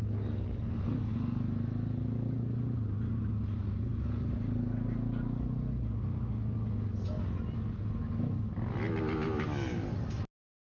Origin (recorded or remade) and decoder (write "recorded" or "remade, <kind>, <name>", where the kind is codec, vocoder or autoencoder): recorded